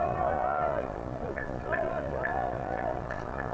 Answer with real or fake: fake